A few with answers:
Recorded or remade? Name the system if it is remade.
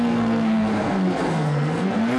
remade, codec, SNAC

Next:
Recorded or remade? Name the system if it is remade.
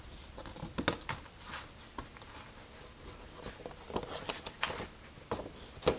recorded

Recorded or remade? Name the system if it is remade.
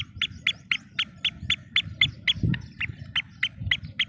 recorded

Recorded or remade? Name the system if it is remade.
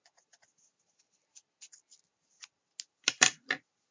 recorded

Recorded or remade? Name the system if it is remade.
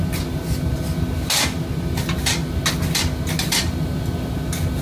recorded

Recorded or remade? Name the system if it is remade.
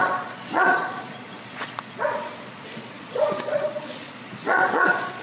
remade, vocoder, Vocos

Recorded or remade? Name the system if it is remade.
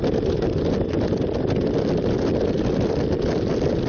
recorded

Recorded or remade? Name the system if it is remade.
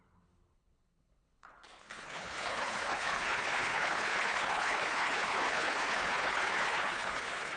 remade, codec, HILCodec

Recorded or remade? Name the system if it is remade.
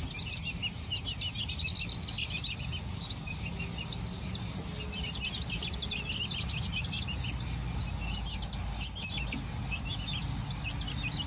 recorded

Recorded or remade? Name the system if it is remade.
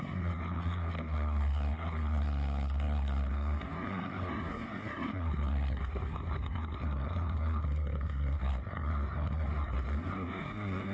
remade, codec, SNAC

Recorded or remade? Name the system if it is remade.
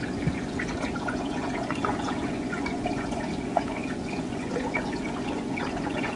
remade, vocoder, Vocos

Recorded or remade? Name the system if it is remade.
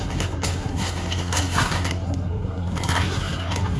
remade, codec, SNAC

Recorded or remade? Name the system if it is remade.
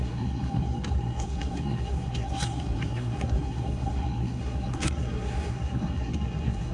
remade, codec, SNAC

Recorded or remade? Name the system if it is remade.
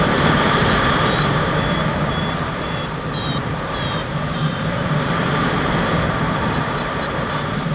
remade, vocoder, BigVGAN v2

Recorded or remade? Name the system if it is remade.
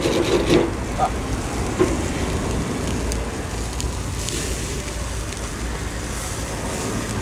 recorded